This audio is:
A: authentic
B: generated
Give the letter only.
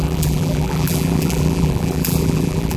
B